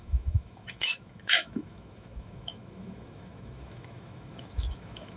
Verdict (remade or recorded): remade